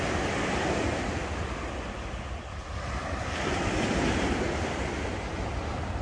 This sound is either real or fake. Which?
real